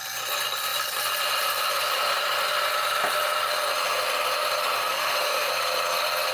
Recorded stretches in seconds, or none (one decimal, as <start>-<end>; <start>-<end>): 0.0-4.9; 5.5-6.3